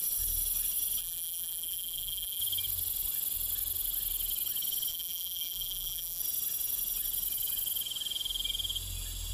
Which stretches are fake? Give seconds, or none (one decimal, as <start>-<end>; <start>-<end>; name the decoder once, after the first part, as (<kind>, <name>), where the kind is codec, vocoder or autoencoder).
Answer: 1.0-2.4 (vocoder, BigVGAN v2); 4.9-6.2